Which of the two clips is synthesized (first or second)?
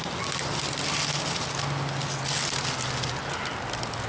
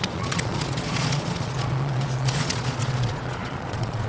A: second